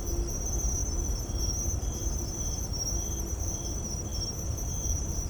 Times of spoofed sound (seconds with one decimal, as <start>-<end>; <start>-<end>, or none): 2.0-3.6; 4.1-4.7